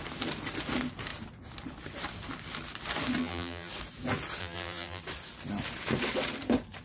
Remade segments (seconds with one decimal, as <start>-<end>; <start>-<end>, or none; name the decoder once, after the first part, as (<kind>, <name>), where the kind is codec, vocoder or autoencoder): 3.2-3.7 (vocoder, BigVGAN v2); 4.4-5.0